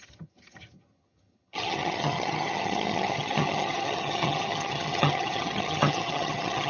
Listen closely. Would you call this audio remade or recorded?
remade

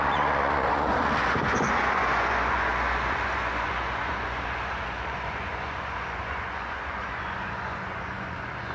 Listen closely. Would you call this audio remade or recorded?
remade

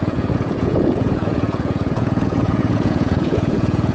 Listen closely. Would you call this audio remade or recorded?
remade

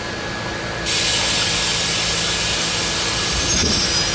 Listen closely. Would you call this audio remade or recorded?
recorded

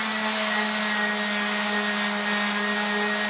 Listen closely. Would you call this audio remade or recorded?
recorded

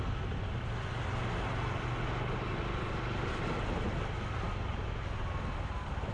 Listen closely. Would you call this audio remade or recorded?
recorded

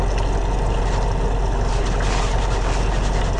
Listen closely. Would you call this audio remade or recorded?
recorded